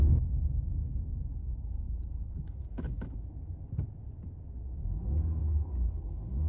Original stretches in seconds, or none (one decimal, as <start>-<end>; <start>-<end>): 0.0-1.4; 3.0-5.4